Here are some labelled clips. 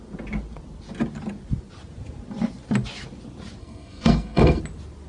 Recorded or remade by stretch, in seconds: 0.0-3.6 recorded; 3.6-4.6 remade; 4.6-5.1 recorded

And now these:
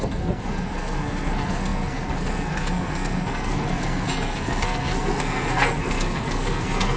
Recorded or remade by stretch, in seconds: 0.0-7.0 remade

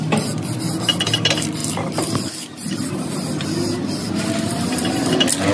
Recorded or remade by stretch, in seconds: 0.0-5.5 recorded

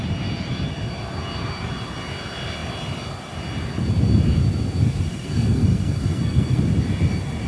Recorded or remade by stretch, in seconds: 0.0-5.1 recorded; 5.1-6.6 remade; 6.6-7.5 recorded

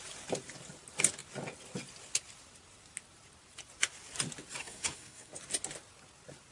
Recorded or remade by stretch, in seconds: 0.0-4.6 recorded; 4.6-5.3 remade; 5.3-6.5 recorded

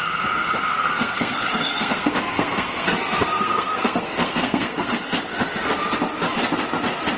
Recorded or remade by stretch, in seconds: 0.0-0.7 recorded; 0.7-5.0 remade; 5.0-7.2 recorded